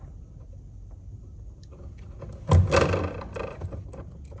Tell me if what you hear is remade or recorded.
recorded